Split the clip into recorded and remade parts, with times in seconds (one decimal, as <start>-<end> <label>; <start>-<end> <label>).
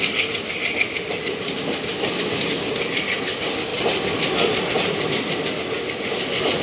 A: 0.0-6.6 recorded